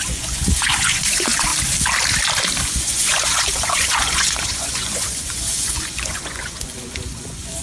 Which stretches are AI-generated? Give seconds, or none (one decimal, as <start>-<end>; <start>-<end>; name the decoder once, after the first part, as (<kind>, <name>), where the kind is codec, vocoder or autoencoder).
0.0-1.5 (vocoder, Vocos); 2.6-7.6